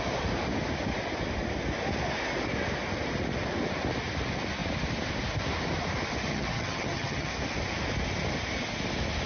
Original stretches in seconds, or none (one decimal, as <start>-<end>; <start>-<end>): 0.0-6.3; 7.3-9.3